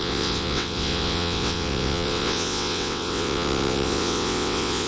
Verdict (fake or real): fake